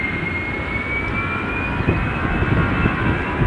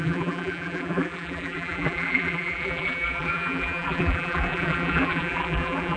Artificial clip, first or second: second